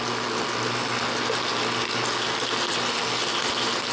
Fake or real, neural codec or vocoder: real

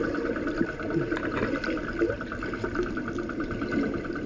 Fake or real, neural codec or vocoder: real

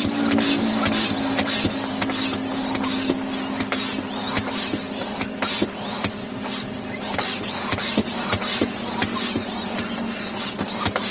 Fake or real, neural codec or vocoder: real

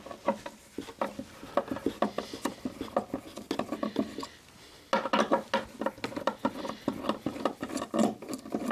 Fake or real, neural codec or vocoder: real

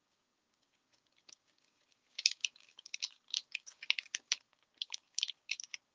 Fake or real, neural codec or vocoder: fake, codec, DAC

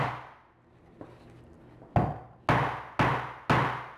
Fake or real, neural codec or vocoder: real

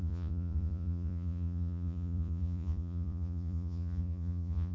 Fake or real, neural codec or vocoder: fake, vocoder, Vocos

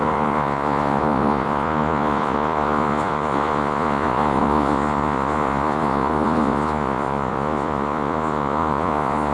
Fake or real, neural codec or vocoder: fake, vocoder, Vocos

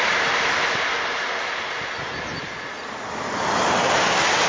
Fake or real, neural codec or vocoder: real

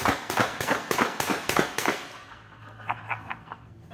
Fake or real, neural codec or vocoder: fake, codec, SNAC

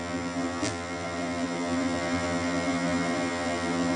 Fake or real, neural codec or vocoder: fake, vocoder, BigVGAN v2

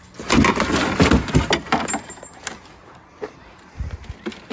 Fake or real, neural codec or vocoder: real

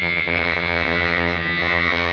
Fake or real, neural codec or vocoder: fake, vocoder, HiFi-GAN